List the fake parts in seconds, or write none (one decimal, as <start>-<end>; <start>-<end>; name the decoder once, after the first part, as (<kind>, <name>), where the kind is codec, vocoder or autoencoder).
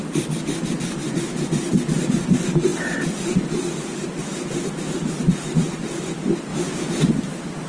6.5-7.1 (vocoder, BigVGAN v2)